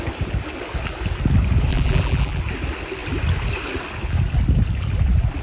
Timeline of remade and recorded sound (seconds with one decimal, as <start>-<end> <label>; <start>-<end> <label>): 0.0-1.7 recorded; 1.7-2.4 remade; 2.4-5.4 recorded